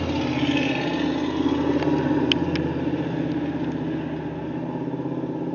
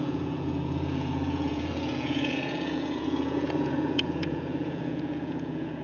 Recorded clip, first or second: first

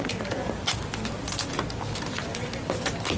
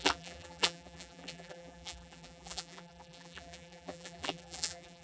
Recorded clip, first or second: first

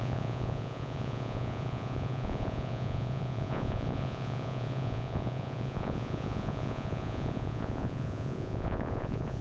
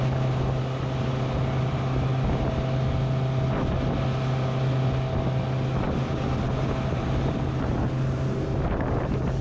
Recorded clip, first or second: second